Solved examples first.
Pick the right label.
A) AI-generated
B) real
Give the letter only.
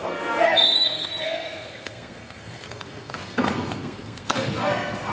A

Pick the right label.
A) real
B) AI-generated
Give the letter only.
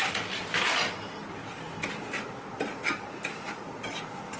A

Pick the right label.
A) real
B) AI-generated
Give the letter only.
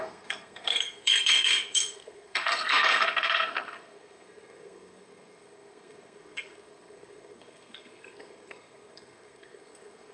B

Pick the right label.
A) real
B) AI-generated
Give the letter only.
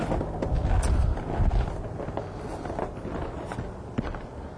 A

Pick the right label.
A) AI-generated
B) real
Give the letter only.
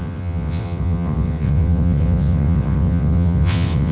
A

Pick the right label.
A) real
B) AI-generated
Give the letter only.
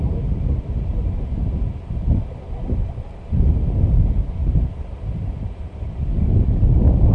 A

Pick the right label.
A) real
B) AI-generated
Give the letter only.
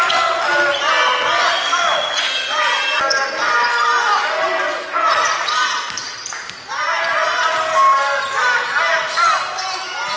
A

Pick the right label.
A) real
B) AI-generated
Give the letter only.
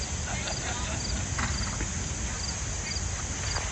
A